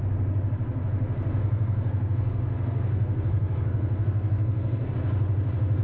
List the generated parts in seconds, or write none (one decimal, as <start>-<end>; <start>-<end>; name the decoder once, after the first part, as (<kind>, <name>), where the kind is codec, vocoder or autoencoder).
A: 1.4-4.9 (codec, SNAC)